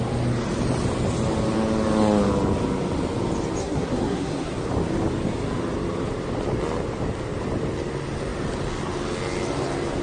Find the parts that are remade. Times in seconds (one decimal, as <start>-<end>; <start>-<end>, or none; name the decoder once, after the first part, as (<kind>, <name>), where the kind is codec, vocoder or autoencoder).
3.6-4.6 (codec, SNAC)